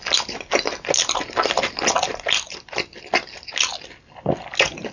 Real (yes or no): yes